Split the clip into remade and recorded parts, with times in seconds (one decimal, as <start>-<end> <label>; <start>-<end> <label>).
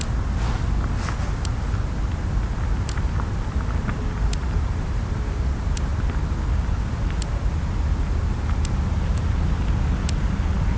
0.0-10.8 recorded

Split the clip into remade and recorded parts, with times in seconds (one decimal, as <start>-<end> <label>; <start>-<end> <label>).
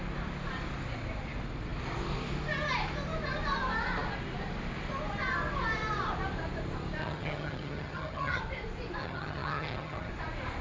0.0-7.0 recorded; 7.0-8.4 remade; 8.4-9.0 recorded; 9.0-10.1 remade; 10.1-10.6 recorded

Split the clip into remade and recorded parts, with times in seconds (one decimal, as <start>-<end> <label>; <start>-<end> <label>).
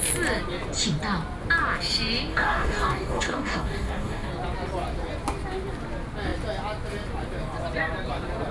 0.0-2.3 recorded; 2.3-4.3 remade; 4.3-8.5 recorded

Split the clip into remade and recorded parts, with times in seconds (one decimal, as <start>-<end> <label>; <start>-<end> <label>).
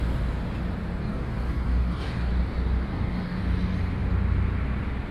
0.0-1.0 recorded; 1.0-2.3 remade; 2.3-2.9 recorded; 2.9-3.4 remade; 3.4-5.1 recorded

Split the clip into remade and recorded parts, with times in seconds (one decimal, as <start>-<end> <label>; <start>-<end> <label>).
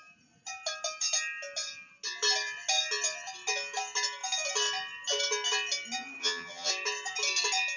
0.0-6.2 recorded; 6.2-6.7 remade; 6.7-7.8 recorded